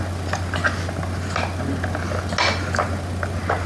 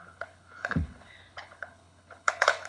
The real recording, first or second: first